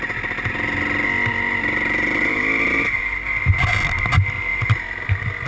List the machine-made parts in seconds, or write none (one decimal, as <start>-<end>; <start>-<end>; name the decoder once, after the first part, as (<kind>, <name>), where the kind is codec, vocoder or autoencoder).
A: none